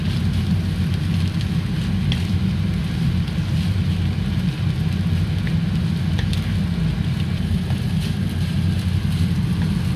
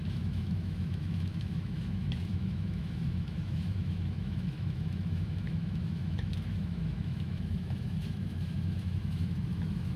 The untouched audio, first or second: first